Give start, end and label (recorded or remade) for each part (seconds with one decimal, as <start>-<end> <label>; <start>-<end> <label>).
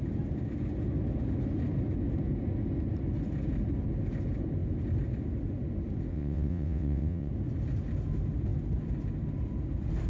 0.0-6.1 recorded; 6.1-7.3 remade; 7.3-10.1 recorded